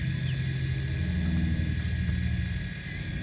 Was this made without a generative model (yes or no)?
yes